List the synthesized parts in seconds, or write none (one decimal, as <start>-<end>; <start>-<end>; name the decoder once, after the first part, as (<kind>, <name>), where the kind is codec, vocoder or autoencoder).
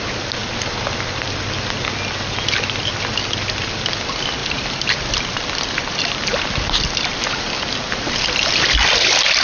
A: none